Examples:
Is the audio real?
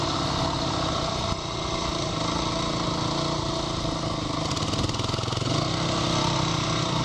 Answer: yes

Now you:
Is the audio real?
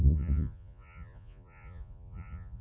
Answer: no